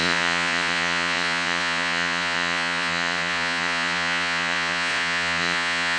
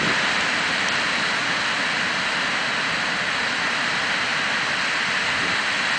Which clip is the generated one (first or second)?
first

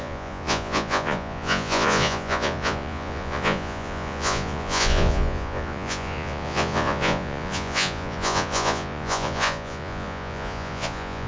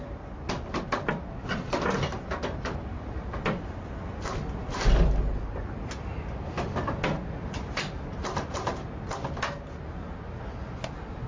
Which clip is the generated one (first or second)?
first